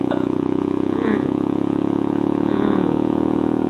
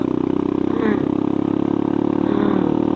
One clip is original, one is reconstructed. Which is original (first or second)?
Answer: second